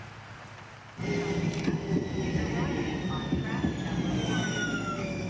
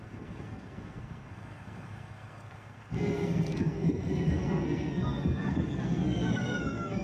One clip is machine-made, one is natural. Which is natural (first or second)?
first